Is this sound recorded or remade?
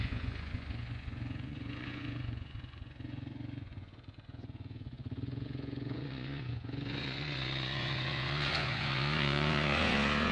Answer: remade